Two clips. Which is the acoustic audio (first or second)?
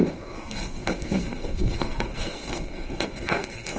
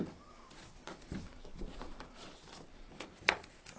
second